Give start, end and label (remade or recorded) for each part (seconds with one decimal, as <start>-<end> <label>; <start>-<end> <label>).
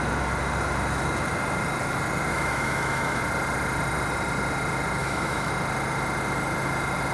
0.0-2.3 recorded; 2.3-3.2 remade; 3.2-5.0 recorded; 5.0-5.5 remade; 5.5-7.1 recorded